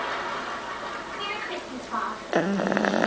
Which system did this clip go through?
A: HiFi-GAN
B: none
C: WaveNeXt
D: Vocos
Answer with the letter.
B